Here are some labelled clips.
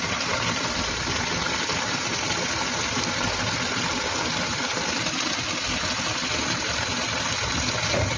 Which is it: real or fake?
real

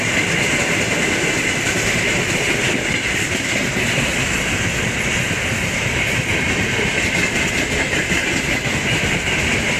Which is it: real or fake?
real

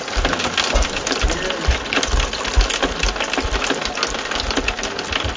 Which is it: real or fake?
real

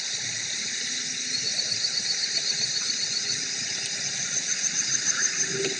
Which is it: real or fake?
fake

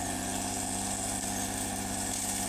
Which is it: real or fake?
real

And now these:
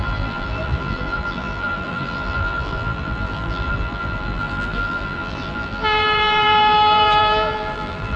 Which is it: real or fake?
fake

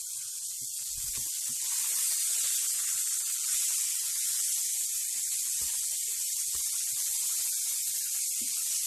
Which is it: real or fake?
real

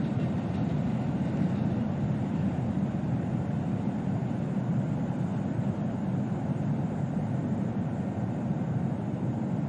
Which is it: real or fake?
fake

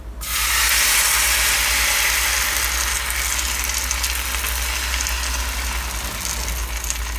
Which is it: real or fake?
real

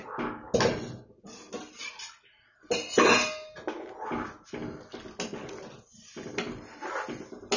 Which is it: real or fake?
real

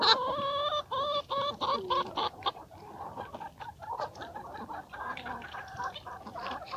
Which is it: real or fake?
real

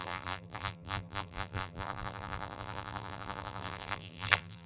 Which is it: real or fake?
fake